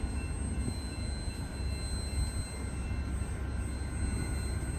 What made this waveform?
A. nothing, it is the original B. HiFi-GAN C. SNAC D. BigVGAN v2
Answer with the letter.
A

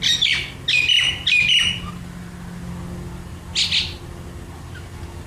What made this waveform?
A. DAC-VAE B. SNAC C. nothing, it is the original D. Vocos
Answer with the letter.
C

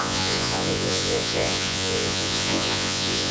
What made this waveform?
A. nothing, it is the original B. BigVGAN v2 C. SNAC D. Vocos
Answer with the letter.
D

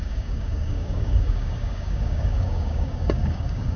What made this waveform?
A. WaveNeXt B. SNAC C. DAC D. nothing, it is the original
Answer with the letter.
C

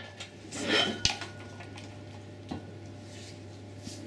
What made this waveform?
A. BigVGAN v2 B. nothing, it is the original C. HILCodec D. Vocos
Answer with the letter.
B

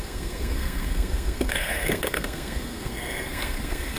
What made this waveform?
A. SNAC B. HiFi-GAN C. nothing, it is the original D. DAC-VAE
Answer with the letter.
A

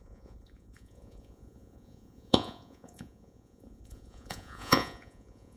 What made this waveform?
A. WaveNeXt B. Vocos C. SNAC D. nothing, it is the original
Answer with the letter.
B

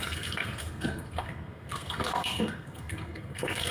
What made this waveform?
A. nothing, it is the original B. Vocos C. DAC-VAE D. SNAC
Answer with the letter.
D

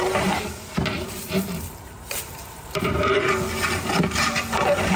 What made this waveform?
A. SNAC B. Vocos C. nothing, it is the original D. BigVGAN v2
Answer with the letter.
D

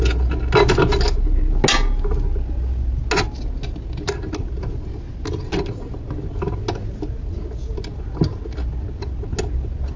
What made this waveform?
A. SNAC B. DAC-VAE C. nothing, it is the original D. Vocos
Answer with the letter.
C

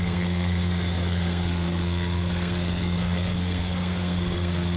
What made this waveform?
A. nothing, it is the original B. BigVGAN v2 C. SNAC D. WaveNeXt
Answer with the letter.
C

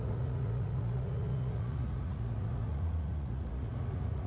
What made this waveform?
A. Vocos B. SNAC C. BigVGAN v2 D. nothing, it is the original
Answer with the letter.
A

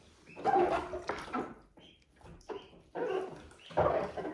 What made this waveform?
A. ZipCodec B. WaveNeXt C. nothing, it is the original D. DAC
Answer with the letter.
C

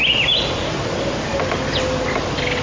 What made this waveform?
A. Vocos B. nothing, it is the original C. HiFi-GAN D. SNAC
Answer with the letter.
B